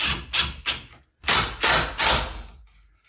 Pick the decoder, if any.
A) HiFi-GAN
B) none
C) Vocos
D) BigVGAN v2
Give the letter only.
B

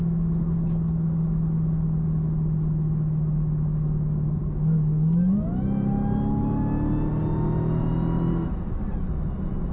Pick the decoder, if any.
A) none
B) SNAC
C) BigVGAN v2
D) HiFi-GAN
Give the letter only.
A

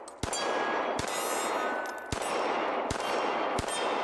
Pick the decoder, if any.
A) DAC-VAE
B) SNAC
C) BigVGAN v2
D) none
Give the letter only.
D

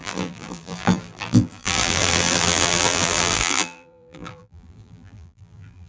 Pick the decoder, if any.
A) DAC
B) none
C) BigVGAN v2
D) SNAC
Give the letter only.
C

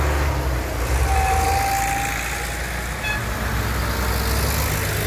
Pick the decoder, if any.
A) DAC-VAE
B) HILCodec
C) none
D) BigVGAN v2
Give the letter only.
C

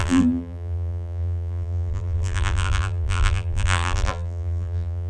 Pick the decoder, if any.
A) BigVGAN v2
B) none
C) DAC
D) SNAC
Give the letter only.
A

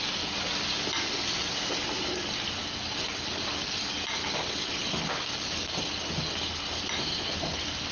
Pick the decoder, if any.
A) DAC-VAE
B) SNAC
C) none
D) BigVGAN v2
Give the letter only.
C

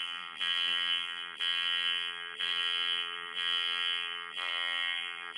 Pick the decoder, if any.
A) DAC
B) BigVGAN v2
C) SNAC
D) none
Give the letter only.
B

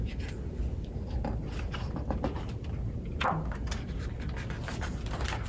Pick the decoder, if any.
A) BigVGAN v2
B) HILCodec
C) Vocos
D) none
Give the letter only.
D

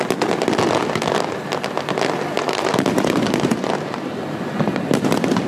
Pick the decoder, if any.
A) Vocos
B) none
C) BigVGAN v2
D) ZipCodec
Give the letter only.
B